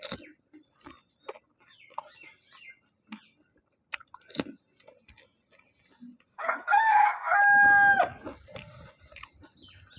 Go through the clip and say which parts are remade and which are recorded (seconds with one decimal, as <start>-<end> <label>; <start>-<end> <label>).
0.0-6.3 recorded; 6.3-7.4 remade; 7.4-10.0 recorded